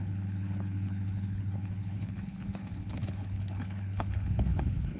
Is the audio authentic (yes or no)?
no